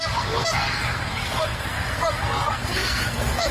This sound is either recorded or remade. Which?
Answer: remade